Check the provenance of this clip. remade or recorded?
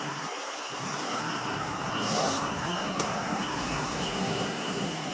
remade